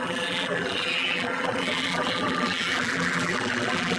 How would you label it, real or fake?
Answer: fake